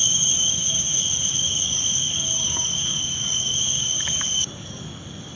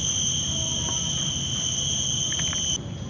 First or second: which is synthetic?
first